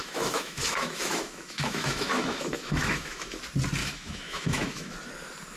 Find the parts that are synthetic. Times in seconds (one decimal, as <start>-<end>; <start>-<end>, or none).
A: 0.0-3.4; 3.8-4.9